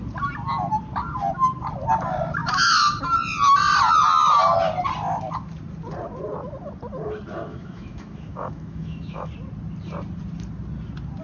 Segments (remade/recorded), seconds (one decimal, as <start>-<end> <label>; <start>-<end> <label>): 0.0-2.4 recorded; 2.4-3.0 remade; 3.0-7.5 recorded; 7.5-9.3 remade; 9.3-11.2 recorded